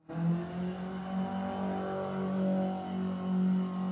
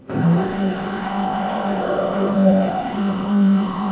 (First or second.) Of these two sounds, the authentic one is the first